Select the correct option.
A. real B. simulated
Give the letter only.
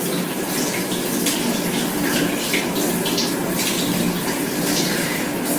A